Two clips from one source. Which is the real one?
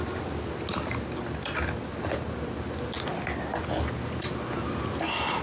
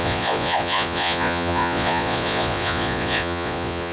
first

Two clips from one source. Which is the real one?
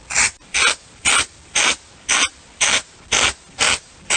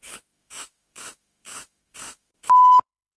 first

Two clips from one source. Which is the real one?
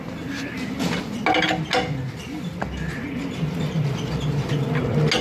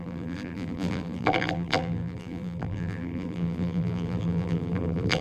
first